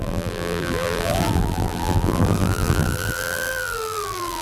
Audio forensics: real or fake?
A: fake